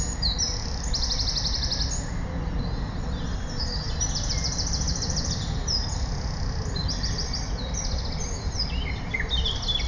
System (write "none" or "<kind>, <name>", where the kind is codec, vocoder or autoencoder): none